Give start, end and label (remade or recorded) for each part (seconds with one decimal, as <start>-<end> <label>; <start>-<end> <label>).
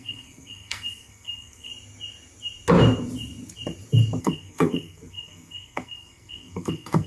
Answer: 0.0-1.7 remade; 1.7-4.2 recorded; 4.2-7.1 remade